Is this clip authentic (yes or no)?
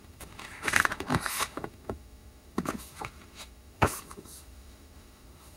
no